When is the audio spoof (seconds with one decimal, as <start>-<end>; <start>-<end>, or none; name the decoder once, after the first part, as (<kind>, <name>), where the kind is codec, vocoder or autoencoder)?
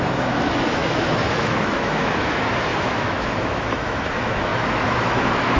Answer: 0.0-5.6 (autoencoder, DAC-VAE)